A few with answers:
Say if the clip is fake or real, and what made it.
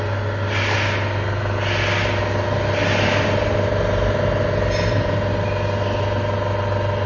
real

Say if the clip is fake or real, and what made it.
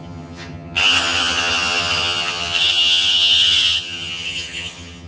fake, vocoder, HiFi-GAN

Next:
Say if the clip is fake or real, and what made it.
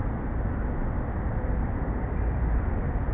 real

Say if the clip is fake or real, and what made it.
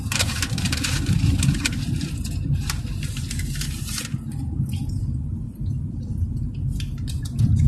fake, vocoder, BigVGAN v2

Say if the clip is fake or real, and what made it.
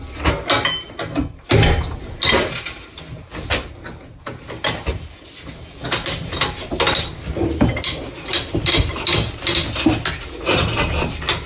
real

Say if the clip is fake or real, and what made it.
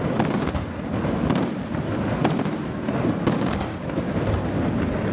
real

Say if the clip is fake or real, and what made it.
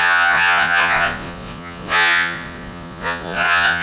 fake, vocoder, Vocos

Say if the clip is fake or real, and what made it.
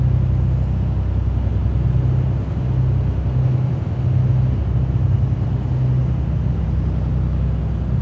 real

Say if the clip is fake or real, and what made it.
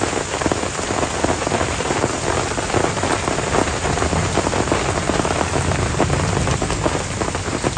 real